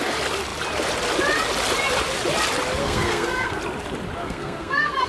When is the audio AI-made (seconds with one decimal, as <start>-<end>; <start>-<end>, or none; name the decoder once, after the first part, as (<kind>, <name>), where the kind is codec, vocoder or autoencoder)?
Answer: 2.8-3.6 (codec, SNAC); 4.2-5.1